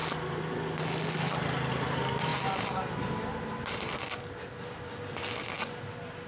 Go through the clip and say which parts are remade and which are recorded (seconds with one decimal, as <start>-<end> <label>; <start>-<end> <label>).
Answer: 0.0-1.4 recorded; 1.4-2.3 remade; 2.3-6.3 recorded